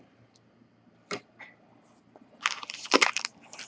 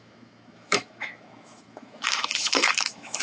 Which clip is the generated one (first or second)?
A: second